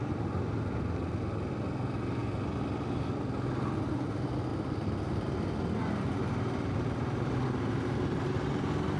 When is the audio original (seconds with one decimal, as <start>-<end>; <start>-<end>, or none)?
0.0-9.0

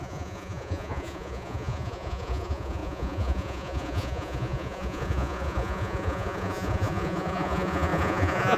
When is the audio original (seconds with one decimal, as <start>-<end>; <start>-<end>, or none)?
none

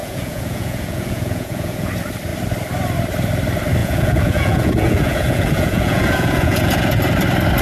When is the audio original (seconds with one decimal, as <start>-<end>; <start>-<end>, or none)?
1.9-3.8; 7.0-7.6